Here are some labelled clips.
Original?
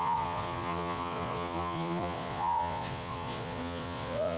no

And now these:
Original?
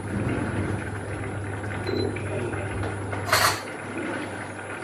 yes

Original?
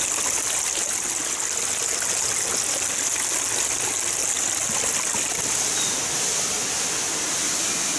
yes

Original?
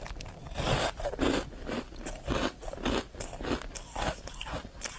yes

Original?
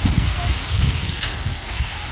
no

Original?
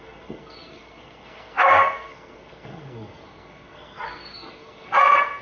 no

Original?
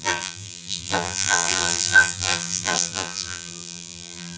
no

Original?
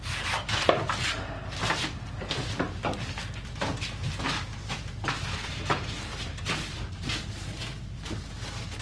yes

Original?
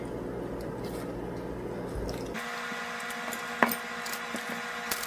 yes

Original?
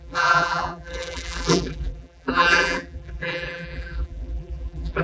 no